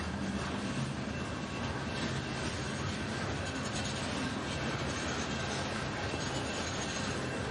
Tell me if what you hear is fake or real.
real